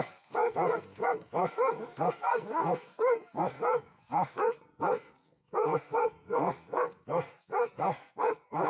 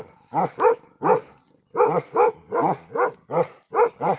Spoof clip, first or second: first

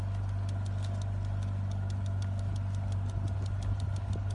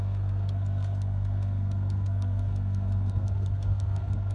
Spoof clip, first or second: second